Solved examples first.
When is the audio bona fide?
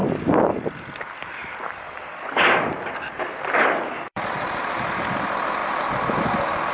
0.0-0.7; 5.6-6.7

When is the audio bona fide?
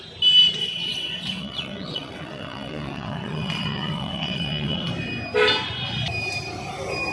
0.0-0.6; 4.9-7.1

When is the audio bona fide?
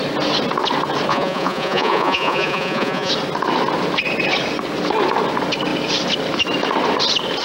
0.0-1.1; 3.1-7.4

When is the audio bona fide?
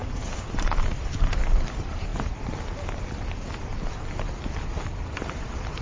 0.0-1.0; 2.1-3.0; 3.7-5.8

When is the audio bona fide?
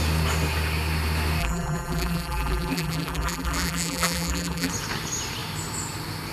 0.0-1.4; 4.7-6.3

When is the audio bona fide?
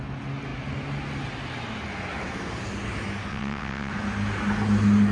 0.0-3.3; 3.9-5.1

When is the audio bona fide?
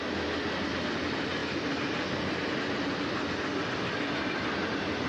0.0-5.1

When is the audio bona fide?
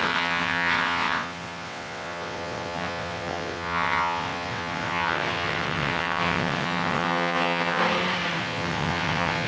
7.8-8.4